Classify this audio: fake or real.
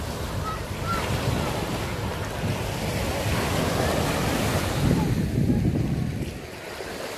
real